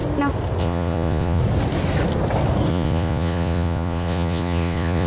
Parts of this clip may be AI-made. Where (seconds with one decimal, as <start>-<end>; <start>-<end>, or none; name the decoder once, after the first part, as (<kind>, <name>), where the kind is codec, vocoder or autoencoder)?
0.6-1.4 (vocoder, Vocos); 2.7-5.1